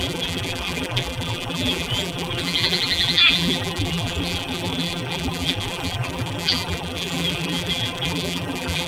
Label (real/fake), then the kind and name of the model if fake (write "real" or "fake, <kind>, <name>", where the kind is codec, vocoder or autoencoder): fake, vocoder, BigVGAN v2